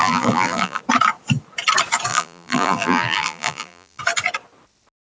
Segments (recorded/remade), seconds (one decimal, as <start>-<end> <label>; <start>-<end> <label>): 0.0-0.8 remade; 0.8-2.1 recorded; 2.1-4.0 remade; 4.0-5.1 recorded